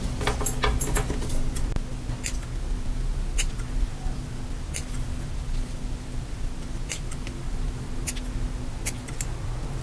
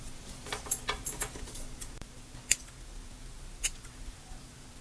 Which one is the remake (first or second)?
second